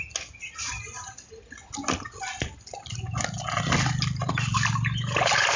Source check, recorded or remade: recorded